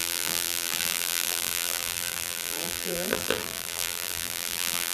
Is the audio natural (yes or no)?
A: no